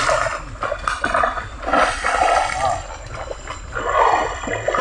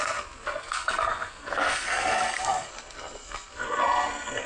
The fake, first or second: second